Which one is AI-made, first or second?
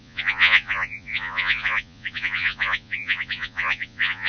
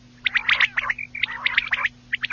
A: first